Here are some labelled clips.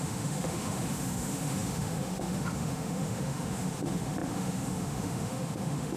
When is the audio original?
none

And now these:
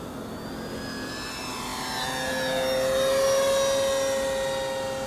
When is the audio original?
0.0-5.1

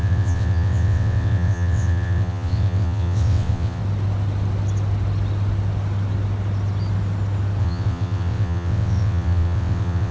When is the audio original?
3.8-7.6

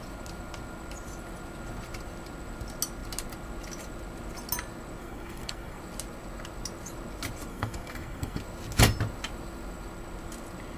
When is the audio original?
0.0-5.0; 5.8-7.5; 8.4-10.8

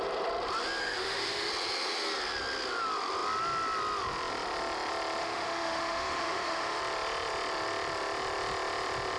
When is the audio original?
0.0-0.8; 1.5-5.2; 6.8-9.2

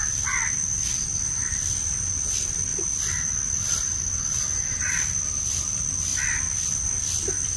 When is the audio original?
0.0-7.6